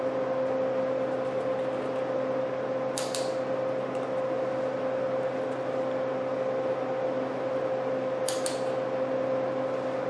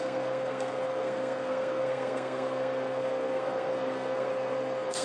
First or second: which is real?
first